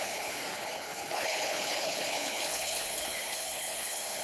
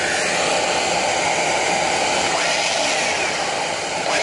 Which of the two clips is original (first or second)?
second